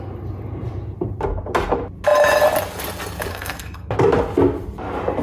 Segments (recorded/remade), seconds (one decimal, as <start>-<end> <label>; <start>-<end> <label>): 0.0-3.3 recorded; 3.3-3.9 remade; 3.9-5.2 recorded